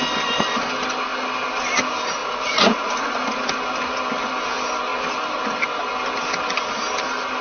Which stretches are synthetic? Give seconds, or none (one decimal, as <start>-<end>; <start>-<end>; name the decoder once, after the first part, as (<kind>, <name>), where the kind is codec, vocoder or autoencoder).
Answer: 2.2-3.2 (vocoder, Vocos)

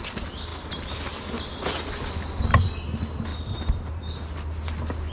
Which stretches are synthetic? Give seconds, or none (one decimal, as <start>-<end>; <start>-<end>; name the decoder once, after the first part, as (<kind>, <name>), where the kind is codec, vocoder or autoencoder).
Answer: 3.3-4.2 (vocoder, BigVGAN v2)

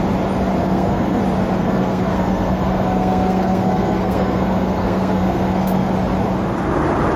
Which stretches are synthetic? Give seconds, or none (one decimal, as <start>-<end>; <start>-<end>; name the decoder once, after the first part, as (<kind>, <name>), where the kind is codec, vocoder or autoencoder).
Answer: 0.6-1.2 (codec, SNAC); 1.6-5.9

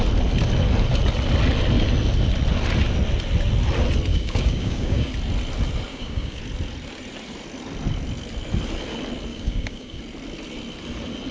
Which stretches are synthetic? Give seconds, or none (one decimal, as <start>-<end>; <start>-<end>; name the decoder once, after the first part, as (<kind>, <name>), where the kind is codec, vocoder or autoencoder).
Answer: 4.1-5.1 (codec, DAC); 5.9-6.4; 9.3-10.0

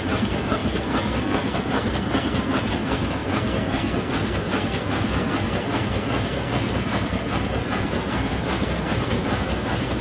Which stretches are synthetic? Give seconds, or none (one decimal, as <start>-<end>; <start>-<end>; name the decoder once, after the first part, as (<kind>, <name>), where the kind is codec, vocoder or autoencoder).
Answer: 0.0-10.0 (codec, SNAC)

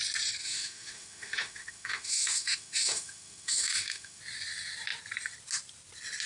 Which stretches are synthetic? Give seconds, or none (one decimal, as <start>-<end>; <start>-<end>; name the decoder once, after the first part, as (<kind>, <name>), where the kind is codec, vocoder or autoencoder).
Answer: 0.4-4.2 (autoencoder, DAC-VAE)

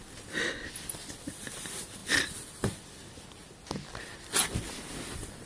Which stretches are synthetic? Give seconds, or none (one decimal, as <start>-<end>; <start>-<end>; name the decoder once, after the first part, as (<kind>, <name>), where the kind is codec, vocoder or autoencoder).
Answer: none

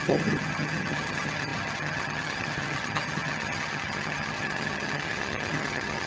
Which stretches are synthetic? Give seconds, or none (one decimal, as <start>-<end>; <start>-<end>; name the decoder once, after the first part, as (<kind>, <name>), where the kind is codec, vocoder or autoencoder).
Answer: 0.0-6.1 (vocoder, HiFi-GAN)